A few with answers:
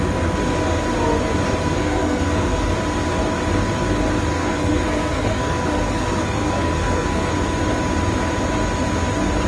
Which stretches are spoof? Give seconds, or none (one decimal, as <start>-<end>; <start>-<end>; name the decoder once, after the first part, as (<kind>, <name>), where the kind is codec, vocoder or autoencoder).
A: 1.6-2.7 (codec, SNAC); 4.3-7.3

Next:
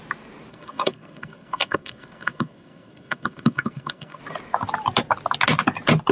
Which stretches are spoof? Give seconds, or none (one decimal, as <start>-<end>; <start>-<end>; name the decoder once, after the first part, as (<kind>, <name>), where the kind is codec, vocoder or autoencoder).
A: 0.5-4.2 (codec, SNAC)

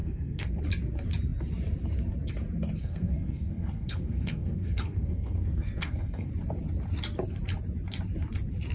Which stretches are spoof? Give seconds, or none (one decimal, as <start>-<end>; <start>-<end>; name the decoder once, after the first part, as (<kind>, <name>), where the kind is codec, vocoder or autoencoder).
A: 0.0-0.6 (codec, SNAC); 2.8-6.3

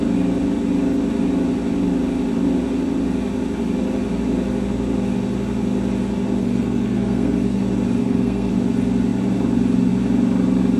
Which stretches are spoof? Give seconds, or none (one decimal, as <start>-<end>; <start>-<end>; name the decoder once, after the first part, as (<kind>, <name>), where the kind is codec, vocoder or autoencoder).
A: 6.4-7.6 (codec, SNAC); 8.0-8.5

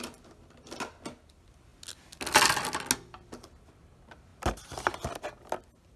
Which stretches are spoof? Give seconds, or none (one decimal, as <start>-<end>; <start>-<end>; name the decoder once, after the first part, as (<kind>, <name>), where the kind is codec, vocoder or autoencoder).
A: none